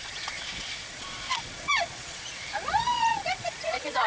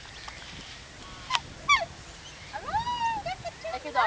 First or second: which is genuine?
second